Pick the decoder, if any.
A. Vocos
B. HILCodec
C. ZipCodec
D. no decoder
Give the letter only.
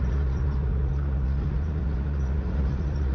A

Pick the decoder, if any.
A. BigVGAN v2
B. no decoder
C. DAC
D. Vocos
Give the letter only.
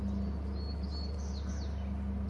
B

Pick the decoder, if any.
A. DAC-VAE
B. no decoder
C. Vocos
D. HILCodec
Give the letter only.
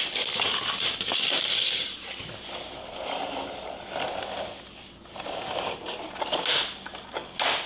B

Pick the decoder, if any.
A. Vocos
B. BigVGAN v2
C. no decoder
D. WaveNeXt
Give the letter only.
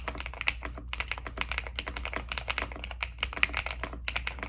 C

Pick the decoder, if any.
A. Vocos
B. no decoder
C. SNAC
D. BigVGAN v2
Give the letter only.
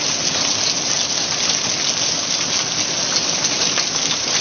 B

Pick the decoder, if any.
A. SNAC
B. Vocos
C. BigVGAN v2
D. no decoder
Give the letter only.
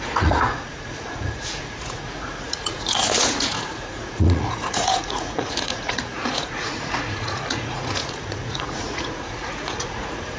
B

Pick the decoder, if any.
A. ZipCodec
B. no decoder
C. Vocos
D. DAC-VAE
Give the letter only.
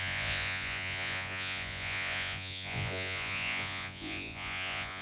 C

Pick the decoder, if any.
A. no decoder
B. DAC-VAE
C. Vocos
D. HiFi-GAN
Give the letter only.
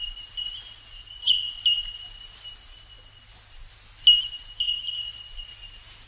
A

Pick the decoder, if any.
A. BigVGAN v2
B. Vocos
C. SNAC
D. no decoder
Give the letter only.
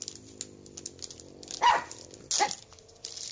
D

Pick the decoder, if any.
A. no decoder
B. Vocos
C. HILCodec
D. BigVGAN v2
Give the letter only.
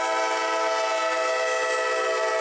A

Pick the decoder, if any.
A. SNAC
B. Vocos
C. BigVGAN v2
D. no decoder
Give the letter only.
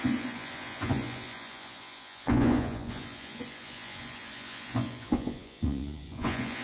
B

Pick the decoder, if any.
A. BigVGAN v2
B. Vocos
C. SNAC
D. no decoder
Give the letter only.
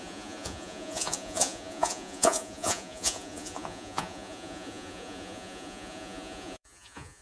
B